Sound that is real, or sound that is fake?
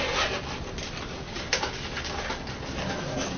real